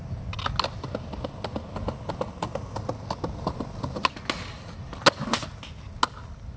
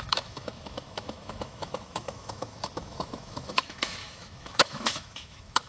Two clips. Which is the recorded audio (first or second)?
first